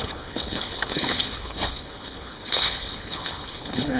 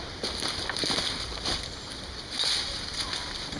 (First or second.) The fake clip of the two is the first